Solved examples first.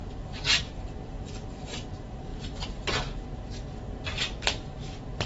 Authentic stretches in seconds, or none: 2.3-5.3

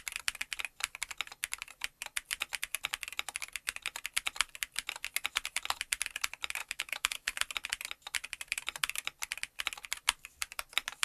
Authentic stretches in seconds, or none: 0.0-6.6; 7.4-11.0

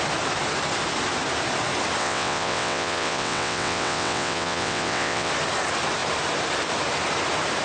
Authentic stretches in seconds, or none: 0.0-2.0; 5.3-7.6

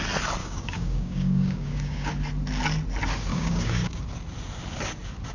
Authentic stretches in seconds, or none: 0.0-0.4; 2.1-3.3; 4.0-5.3

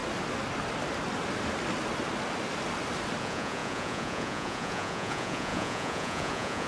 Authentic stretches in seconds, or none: 0.0-3.2

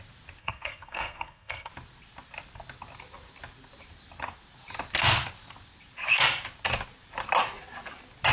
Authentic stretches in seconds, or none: 0.0-0.4; 1.7-8.3

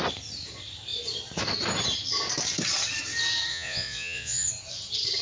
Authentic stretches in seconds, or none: 0.0-3.5; 4.5-5.2

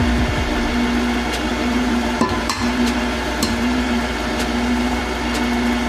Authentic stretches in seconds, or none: 0.0-1.5; 5.0-5.9